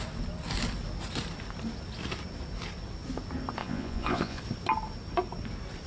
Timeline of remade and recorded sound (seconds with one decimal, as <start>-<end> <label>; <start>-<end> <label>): 0.0-3.6 recorded; 3.6-4.4 remade; 4.4-5.9 recorded